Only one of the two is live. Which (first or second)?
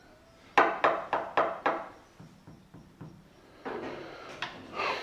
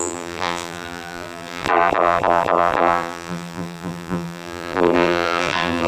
first